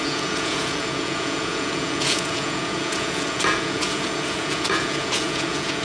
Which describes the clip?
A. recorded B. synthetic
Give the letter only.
B